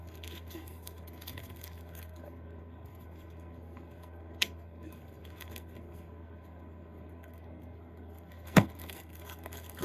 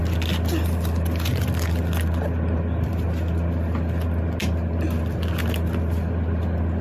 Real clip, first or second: second